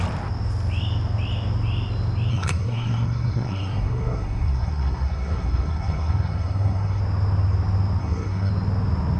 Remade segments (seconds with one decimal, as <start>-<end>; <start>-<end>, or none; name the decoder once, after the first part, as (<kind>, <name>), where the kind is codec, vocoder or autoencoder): 2.3-7.0 (codec, SNAC); 8.0-8.5